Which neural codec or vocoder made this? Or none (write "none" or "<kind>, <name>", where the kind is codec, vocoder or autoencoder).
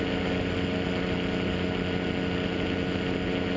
none